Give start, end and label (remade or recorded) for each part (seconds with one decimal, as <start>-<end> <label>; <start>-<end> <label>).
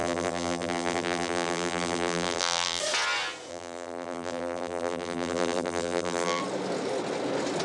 0.0-2.8 remade; 2.8-3.5 recorded; 3.5-6.4 remade; 6.4-7.6 recorded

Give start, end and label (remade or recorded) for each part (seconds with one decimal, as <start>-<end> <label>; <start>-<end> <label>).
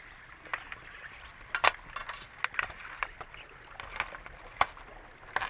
0.0-5.5 recorded